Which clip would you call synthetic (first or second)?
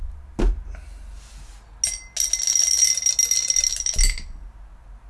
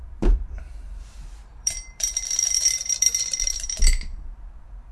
second